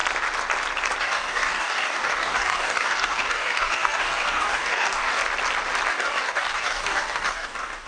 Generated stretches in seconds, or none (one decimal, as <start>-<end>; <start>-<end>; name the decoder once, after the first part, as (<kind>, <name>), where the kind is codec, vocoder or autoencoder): 1.0-5.2 (codec, DAC); 5.9-7.9